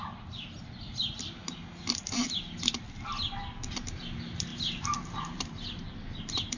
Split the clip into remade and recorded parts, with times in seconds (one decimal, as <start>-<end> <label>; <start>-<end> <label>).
0.0-4.5 recorded; 4.5-5.9 remade; 5.9-6.6 recorded